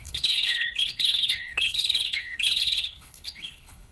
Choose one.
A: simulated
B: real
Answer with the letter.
A